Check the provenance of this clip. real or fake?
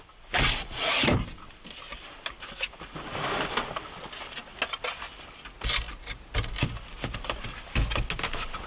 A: real